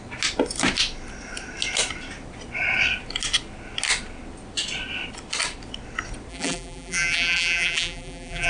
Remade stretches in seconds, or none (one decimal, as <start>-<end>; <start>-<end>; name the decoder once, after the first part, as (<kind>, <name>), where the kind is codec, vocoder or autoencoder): 6.3-8.5 (vocoder, BigVGAN v2)